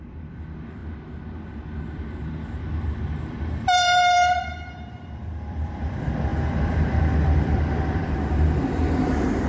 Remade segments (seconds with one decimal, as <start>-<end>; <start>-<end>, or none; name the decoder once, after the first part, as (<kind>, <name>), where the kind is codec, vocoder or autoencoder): 0.0-0.8 (vocoder, BigVGAN v2); 2.2-9.5